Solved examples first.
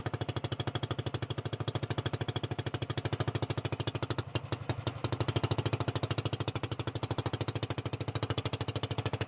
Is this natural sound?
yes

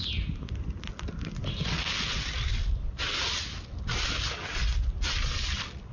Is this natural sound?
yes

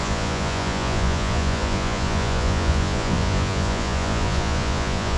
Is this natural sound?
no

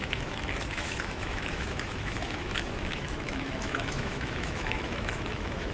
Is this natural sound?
no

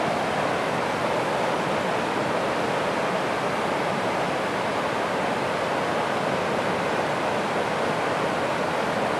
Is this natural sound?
yes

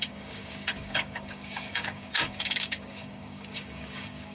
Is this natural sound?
no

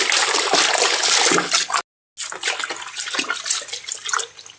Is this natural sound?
yes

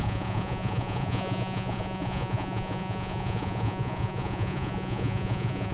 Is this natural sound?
no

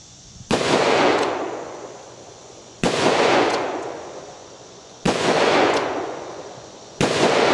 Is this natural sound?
no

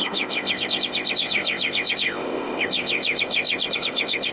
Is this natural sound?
no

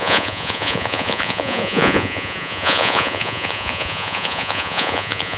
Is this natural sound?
no